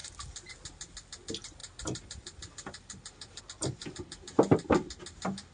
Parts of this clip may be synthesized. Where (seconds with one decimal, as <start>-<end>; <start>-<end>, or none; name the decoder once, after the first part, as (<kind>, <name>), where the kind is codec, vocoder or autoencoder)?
1.6-3.4 (vocoder, BigVGAN v2); 3.8-4.4